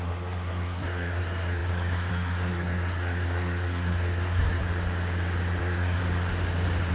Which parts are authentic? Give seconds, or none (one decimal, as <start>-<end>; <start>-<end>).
4.6-5.6; 6.0-6.9